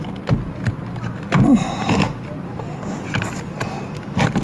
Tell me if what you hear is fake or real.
real